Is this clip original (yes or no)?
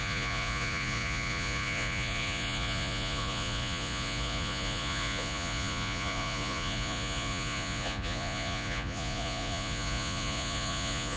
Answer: no